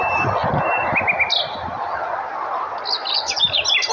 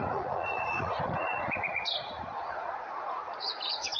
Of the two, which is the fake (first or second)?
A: second